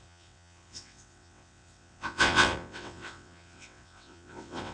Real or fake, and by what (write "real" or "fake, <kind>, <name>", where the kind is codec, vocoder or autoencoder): fake, vocoder, WaveNeXt